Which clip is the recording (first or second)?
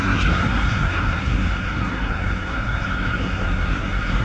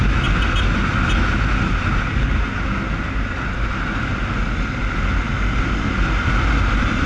second